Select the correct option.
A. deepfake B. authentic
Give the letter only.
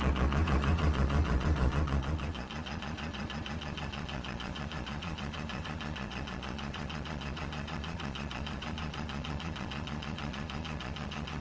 A